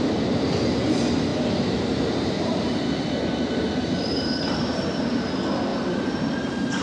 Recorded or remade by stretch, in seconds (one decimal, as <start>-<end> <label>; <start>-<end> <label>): 0.0-1.3 recorded; 1.3-2.6 remade; 2.6-3.8 recorded; 3.8-5.0 remade; 5.0-5.7 recorded; 5.7-6.8 remade